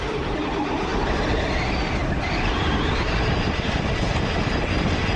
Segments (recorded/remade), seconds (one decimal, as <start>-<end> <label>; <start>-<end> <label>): 0.0-5.2 recorded